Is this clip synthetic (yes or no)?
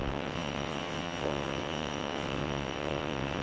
yes